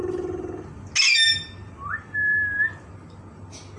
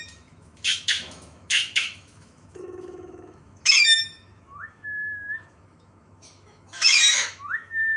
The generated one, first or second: second